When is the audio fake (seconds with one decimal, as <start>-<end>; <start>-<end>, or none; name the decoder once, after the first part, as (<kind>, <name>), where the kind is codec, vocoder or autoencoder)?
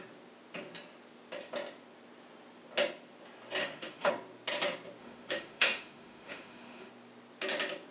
3.6-4.1 (autoencoder, DAC-VAE); 5.0-6.9